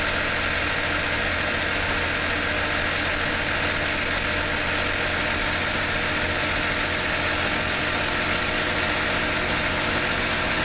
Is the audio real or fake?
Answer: real